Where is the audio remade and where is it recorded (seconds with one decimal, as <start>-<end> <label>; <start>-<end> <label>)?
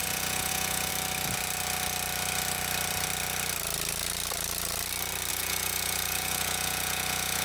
0.0-0.9 remade; 0.9-5.3 recorded; 5.3-7.4 remade